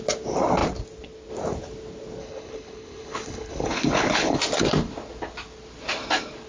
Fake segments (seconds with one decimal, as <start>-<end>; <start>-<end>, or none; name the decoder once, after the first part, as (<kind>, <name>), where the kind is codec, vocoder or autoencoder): 2.2-4.4 (codec, HILCodec)